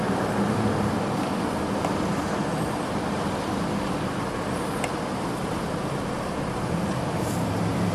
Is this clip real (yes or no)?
no